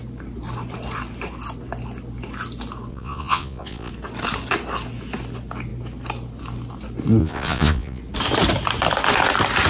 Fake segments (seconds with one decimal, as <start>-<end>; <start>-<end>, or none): 2.9-3.9; 7.2-8.0